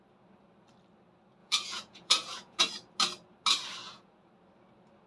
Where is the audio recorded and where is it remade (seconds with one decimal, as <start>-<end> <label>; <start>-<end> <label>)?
0.0-1.4 recorded; 1.4-2.6 remade; 2.6-3.8 recorded; 3.8-4.3 remade; 4.3-5.1 recorded